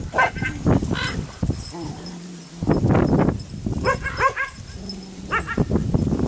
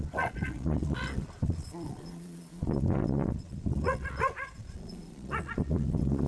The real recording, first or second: first